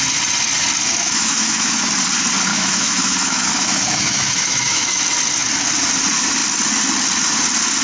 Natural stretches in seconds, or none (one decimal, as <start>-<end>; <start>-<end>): 0.0-0.9; 1.9-2.5; 5.0-7.8